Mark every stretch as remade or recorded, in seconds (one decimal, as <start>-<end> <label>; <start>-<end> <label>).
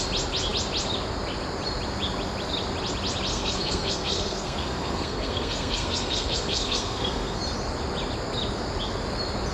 0.0-3.3 recorded; 3.3-7.4 remade; 7.4-9.5 recorded